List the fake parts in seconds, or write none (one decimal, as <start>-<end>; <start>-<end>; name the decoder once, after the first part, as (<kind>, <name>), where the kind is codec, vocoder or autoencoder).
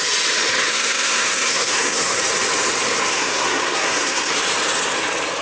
0.7-2.2 (codec, SNAC); 3.1-4.3